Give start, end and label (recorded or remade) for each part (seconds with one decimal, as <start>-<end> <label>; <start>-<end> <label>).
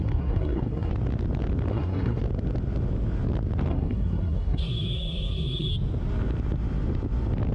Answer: 0.0-0.9 remade; 0.9-1.7 recorded; 1.7-2.2 remade; 2.2-3.7 recorded; 3.7-5.7 remade; 5.7-7.5 recorded